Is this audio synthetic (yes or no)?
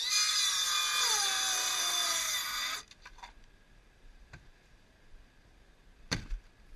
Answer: no